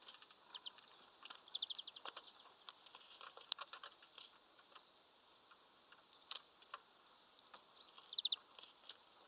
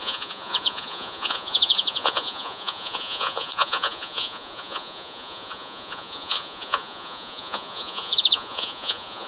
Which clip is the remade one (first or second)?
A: second